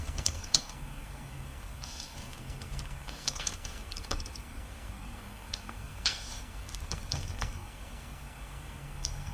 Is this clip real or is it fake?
fake